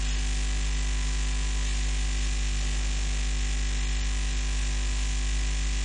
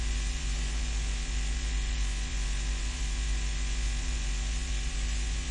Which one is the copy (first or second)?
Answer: second